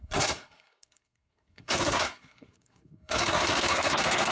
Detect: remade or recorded remade